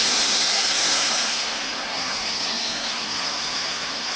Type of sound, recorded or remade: remade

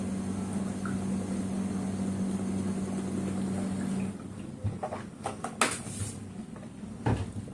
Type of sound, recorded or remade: recorded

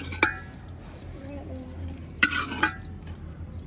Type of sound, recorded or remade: recorded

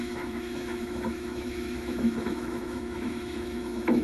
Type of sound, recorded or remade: remade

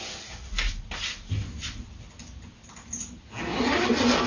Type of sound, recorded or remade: recorded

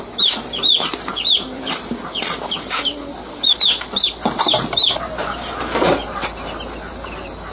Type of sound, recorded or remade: recorded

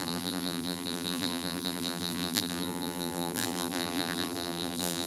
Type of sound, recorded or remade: remade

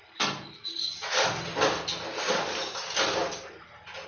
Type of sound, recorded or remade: recorded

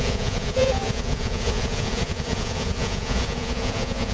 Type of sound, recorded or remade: remade